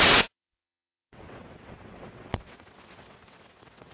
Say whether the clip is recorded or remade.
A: remade